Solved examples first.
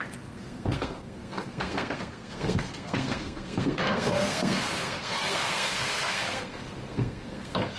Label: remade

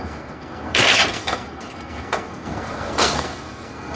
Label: remade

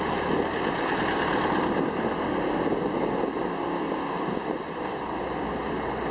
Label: recorded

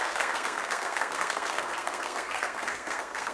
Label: remade